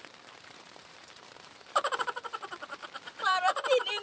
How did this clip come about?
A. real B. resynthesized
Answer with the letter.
B